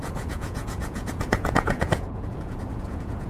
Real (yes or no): no